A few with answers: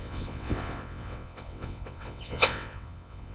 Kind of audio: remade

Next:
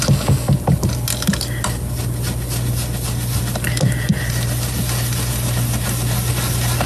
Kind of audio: recorded